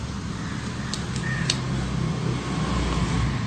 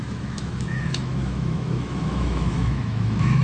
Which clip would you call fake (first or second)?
second